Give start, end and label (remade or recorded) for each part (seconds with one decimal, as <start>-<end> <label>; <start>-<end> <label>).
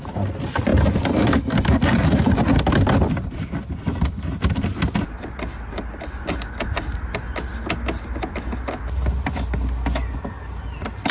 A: 0.0-11.1 recorded